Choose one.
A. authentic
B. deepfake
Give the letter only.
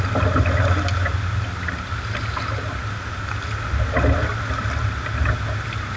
A